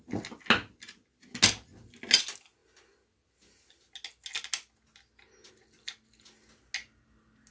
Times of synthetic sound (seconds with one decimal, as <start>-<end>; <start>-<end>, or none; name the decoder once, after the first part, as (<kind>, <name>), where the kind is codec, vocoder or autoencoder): none